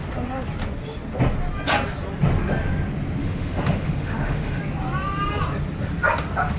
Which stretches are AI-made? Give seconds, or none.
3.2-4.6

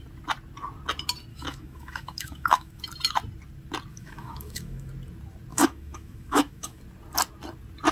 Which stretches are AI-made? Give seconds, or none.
1.3-2.8; 3.9-4.9; 5.5-6.8

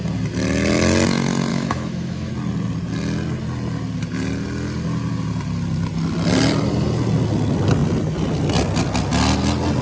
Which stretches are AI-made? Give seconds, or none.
1.5-2.3

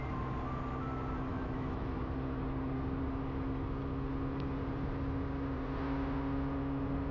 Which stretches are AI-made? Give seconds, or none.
1.3-2.0

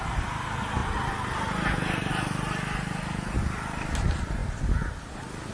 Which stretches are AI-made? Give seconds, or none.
none

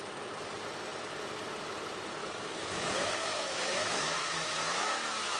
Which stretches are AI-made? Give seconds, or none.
2.2-5.4

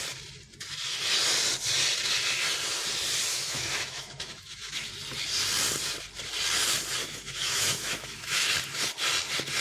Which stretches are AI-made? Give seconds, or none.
3.3-4.9; 7.0-8.5

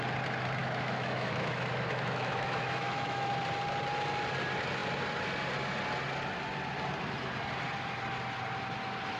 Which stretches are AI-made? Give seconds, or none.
0.6-3.3